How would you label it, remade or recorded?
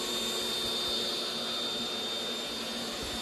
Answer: recorded